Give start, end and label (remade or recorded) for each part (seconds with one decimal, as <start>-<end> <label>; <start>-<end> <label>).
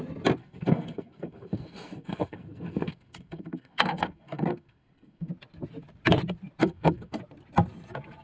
0.0-0.4 recorded; 0.4-5.3 remade; 5.3-6.6 recorded; 6.6-7.2 remade; 7.2-8.2 recorded